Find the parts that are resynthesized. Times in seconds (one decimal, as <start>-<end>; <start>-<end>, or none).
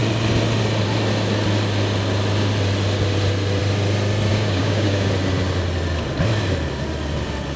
4.3-5.1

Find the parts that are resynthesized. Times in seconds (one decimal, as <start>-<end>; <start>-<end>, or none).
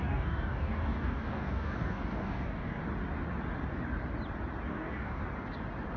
0.0-2.8; 4.7-5.2